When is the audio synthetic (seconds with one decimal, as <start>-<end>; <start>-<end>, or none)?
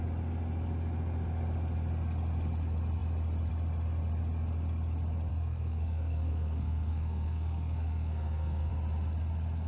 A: 5.3-8.7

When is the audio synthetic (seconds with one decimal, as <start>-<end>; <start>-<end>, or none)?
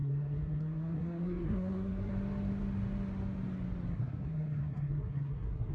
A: 0.0-2.1; 3.9-5.7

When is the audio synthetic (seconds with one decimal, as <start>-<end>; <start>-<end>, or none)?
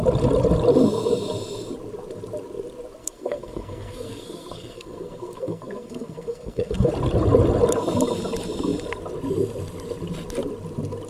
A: 3.0-6.9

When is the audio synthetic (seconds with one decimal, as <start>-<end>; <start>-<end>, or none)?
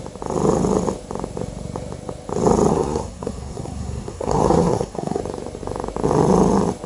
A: 2.7-5.2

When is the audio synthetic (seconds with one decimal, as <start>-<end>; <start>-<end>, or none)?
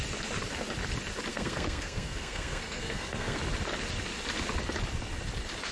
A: 1.3-3.4